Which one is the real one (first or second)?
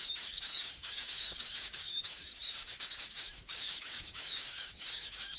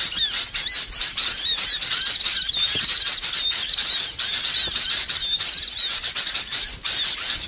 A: second